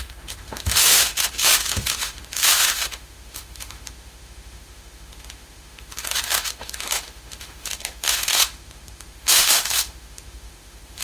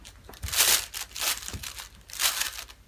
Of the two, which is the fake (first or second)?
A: first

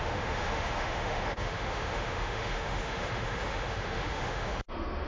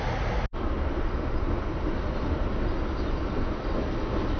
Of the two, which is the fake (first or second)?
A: first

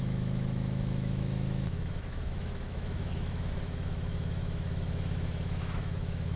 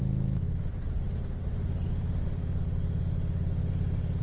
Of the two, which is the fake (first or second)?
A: first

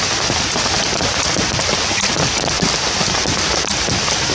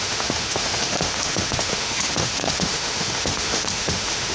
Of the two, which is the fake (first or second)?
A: second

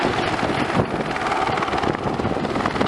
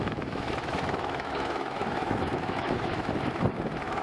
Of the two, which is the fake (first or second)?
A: second